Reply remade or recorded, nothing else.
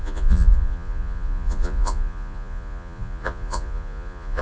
remade